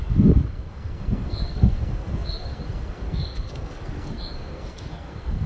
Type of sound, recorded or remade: remade